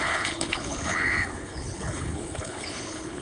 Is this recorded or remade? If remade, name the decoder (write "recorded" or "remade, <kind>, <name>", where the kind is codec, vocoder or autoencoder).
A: remade, codec, HILCodec